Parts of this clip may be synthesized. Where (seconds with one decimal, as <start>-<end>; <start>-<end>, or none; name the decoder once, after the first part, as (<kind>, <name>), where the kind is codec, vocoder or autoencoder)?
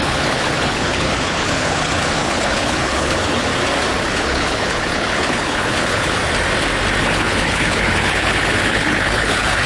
0.0-3.5 (codec, HILCodec); 4.1-6.2; 7.0-9.7